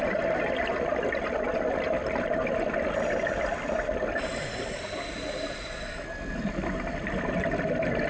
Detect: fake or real real